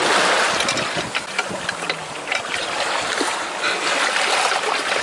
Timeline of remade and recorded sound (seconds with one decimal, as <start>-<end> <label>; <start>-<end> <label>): 0.0-5.0 recorded